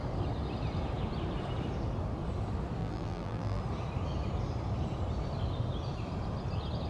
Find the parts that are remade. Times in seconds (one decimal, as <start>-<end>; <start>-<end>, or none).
2.8-3.6